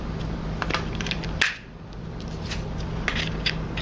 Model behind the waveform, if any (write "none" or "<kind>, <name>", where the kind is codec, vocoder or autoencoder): none